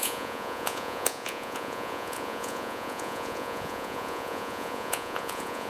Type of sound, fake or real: fake